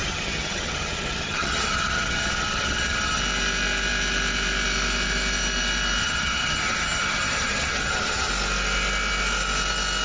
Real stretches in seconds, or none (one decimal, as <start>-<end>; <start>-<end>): 3.2-6.0; 8.3-10.0